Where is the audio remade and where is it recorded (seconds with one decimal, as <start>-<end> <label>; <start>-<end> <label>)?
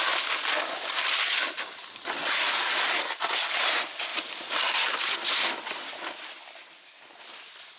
0.0-4.1 recorded; 4.1-6.9 remade; 6.9-7.8 recorded